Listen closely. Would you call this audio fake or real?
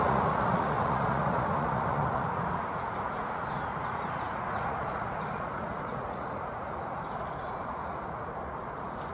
fake